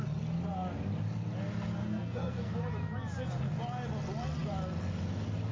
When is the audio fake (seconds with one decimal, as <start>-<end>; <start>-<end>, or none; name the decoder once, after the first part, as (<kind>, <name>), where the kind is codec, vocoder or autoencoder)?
1.8-2.5 (codec, SNAC)

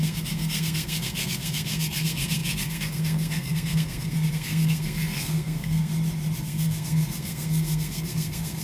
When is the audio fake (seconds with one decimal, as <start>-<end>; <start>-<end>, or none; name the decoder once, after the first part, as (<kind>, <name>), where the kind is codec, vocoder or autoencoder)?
0.0-5.9 (codec, SNAC); 6.4-8.6